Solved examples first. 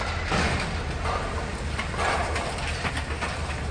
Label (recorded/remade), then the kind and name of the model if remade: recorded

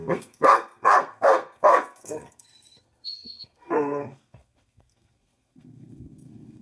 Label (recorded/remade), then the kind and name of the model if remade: remade, codec, SNAC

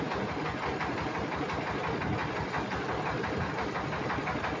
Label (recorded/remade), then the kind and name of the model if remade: recorded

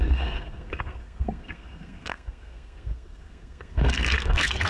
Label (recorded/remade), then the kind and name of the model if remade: remade, codec, SNAC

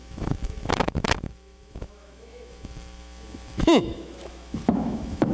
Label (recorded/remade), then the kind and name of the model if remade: remade, autoencoder, DAC-VAE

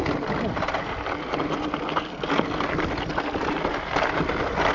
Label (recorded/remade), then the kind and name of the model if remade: recorded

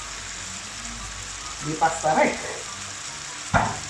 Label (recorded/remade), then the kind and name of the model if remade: recorded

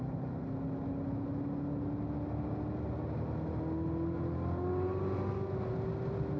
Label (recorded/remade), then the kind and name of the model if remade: recorded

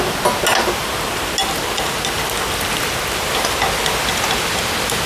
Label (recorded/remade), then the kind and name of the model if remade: recorded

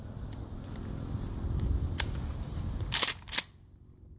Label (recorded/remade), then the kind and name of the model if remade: recorded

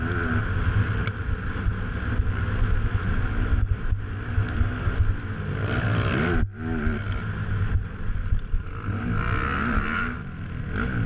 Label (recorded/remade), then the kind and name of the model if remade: recorded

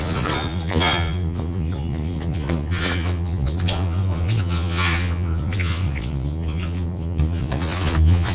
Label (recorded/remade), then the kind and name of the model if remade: remade, vocoder, Vocos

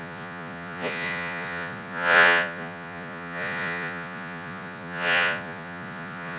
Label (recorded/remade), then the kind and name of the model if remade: remade, vocoder, Vocos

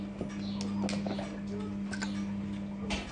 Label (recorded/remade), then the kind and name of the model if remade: recorded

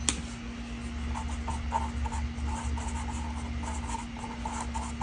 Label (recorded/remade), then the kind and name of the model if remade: recorded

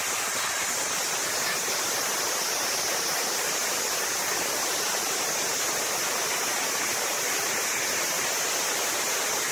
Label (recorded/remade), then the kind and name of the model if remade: recorded